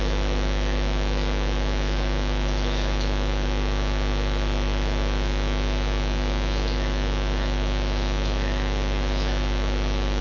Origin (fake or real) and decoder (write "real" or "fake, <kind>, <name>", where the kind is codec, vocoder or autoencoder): fake, autoencoder, DAC-VAE